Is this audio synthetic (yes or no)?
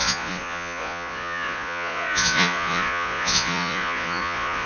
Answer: yes